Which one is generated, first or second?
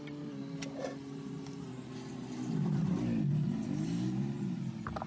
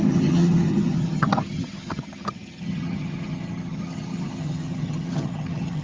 second